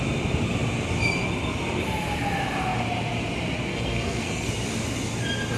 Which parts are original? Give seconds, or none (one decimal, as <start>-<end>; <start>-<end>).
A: 0.0-3.7; 4.5-5.6